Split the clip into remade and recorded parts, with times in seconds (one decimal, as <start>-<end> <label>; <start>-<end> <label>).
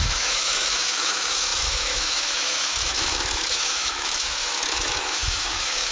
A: 0.0-5.9 remade